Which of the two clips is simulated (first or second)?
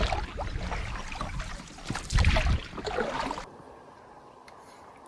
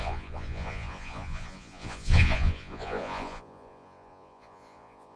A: second